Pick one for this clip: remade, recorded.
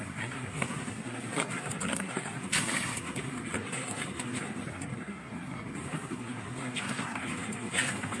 remade